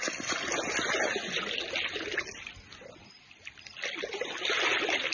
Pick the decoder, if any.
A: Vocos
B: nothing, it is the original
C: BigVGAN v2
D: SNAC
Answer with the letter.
B